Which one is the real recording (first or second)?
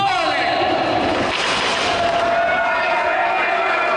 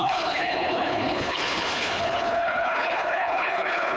first